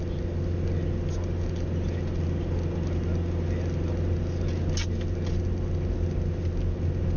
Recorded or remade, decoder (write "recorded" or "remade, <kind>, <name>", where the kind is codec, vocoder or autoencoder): recorded